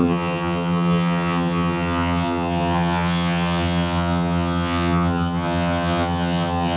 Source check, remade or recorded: remade